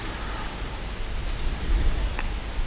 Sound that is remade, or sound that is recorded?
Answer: recorded